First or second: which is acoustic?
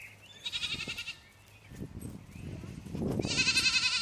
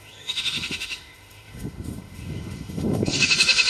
first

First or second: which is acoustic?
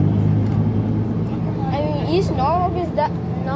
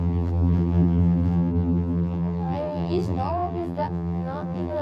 first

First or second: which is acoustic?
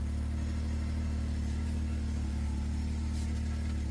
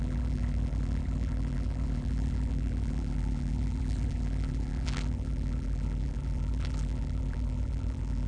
first